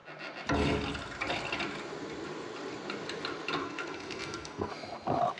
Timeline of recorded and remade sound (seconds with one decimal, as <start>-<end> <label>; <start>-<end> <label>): 0.0-3.6 recorded; 3.6-4.7 remade; 4.7-5.4 recorded